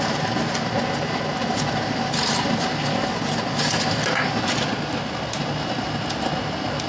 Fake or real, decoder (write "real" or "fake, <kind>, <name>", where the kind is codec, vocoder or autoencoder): real